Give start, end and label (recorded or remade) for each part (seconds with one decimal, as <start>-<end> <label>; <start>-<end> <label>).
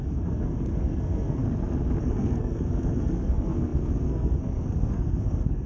0.0-1.4 remade; 1.4-2.0 recorded; 2.0-5.7 remade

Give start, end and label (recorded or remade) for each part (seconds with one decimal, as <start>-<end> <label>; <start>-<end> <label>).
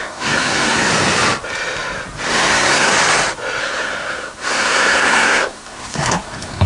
0.0-0.9 remade; 0.9-2.3 recorded; 2.3-2.9 remade; 2.9-3.6 recorded; 3.6-6.7 remade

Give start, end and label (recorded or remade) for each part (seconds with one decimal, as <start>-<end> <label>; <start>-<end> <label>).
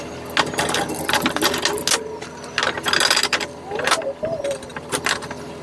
0.0-5.6 recorded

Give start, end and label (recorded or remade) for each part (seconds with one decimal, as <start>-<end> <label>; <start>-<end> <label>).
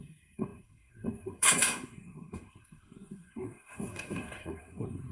0.0-5.1 remade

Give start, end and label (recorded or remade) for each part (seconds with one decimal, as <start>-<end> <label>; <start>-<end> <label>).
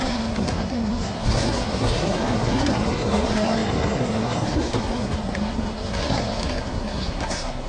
0.0-7.7 remade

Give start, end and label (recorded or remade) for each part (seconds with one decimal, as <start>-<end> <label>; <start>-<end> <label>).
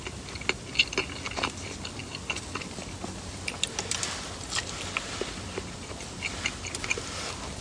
0.0-7.6 recorded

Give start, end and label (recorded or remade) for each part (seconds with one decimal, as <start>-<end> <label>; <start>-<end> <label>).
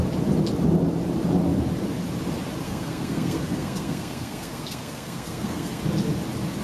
0.0-2.6 recorded; 2.6-5.8 remade; 5.8-6.6 recorded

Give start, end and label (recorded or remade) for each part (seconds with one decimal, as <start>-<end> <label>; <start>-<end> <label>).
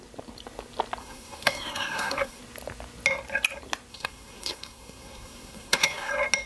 0.0-1.0 recorded; 1.0-2.4 remade; 2.4-3.9 recorded; 3.9-6.1 remade; 6.1-6.5 recorded